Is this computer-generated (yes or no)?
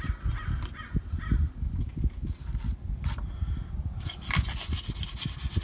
no